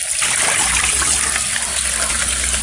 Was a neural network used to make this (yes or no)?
no